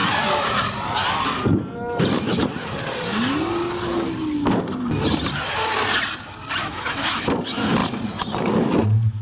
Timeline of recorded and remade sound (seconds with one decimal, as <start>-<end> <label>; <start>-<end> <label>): 0.0-6.6 recorded; 6.6-7.3 remade; 7.3-9.2 recorded